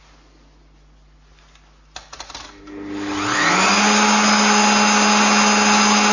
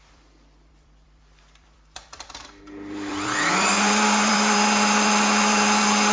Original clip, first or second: first